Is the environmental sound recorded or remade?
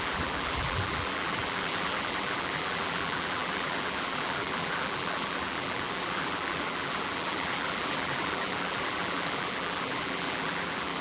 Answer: remade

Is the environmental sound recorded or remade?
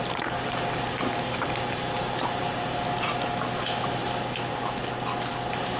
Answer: recorded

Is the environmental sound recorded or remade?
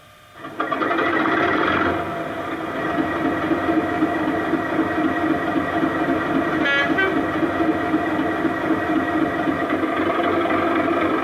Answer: recorded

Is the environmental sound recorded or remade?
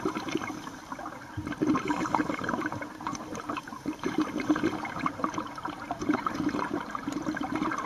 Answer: remade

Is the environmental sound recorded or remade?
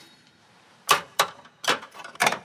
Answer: remade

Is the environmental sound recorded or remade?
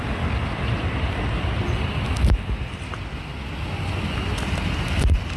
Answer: recorded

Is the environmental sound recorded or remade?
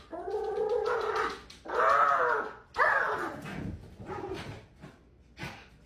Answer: recorded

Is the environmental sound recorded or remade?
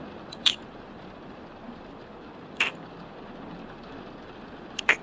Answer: remade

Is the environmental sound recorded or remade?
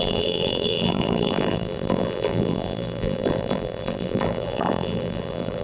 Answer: remade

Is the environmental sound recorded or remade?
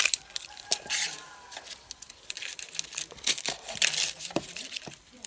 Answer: recorded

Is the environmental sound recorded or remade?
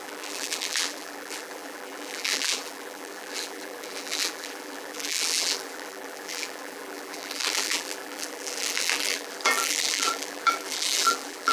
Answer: remade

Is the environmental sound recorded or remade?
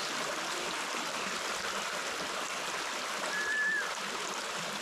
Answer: remade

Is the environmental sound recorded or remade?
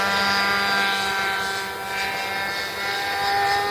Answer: recorded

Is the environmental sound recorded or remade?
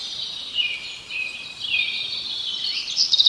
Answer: remade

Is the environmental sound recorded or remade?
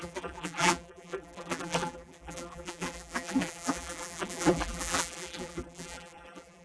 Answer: remade